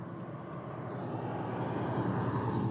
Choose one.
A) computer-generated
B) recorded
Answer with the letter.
B